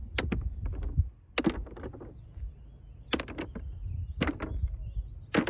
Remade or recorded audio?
recorded